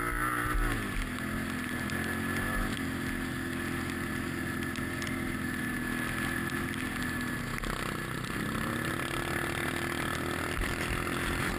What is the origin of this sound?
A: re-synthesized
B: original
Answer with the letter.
B